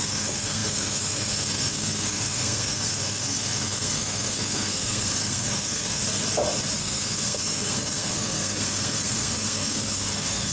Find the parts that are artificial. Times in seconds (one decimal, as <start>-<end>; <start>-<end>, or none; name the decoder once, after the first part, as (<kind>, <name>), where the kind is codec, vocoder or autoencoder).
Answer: 0.0-6.0 (codec, SNAC); 6.8-10.5